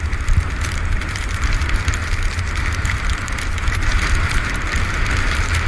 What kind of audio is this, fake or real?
fake